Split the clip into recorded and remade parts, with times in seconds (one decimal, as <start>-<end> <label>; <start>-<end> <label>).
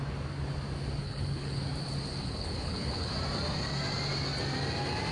0.0-1.0 recorded; 1.0-1.6 remade; 1.6-2.2 recorded; 2.2-3.1 remade; 3.1-5.1 recorded